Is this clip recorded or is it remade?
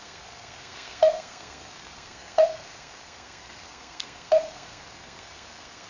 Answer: remade